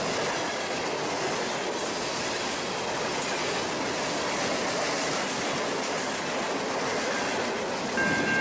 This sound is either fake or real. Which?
real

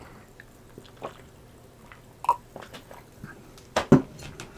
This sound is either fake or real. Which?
real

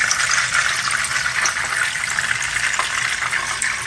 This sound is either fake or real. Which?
real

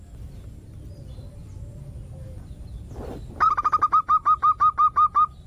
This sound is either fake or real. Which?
real